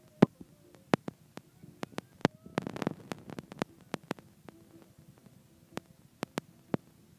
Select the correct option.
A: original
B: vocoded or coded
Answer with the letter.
A